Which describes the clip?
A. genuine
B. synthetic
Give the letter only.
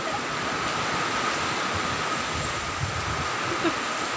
A